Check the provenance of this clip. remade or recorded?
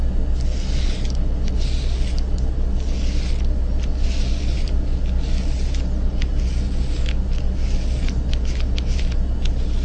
recorded